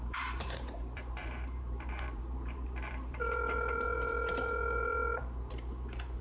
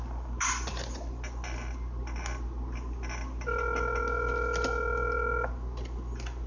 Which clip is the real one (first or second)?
second